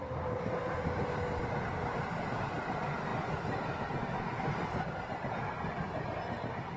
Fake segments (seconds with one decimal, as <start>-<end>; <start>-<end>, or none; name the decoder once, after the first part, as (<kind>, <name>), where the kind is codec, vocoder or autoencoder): none